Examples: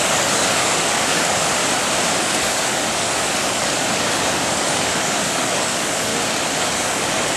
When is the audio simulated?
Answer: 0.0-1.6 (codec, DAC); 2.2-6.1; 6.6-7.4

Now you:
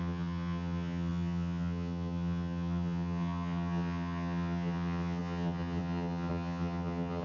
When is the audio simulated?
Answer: 0.0-7.2 (vocoder, HiFi-GAN)